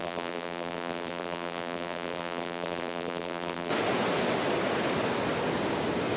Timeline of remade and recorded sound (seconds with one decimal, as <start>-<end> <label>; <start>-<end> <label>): 0.0-3.7 remade; 3.7-6.2 recorded